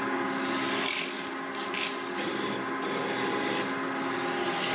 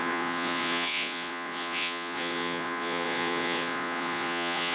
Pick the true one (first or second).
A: first